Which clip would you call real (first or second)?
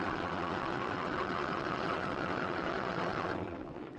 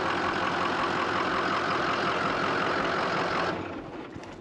second